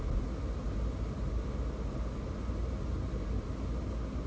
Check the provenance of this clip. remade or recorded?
recorded